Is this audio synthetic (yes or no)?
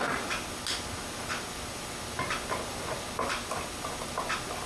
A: no